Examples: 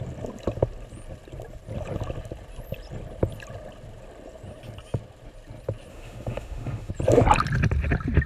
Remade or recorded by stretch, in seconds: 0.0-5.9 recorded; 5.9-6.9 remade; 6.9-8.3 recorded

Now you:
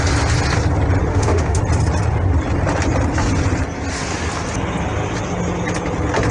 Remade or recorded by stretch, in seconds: 0.0-1.1 recorded; 1.1-1.6 remade; 1.6-6.3 recorded

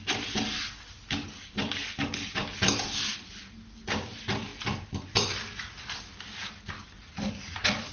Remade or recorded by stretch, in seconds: 0.0-7.9 recorded

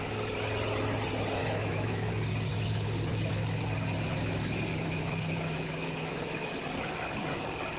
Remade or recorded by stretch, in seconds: 0.0-1.4 recorded; 1.4-2.1 remade; 2.1-2.5 recorded; 2.5-3.3 remade; 3.3-4.7 recorded; 4.7-6.5 remade; 6.5-7.8 recorded

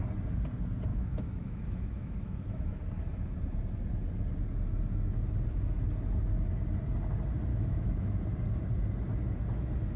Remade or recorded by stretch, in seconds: 0.0-0.9 recorded; 0.9-2.8 remade; 2.8-7.5 recorded; 7.5-8.2 remade; 8.2-10.0 recorded

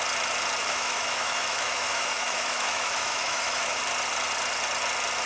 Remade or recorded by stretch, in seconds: 0.0-0.6 recorded; 0.6-3.8 remade; 3.8-5.3 recorded

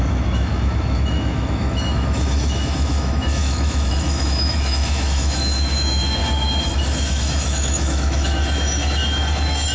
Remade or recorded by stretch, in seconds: 0.0-6.2 remade; 6.2-6.7 recorded; 6.7-9.7 remade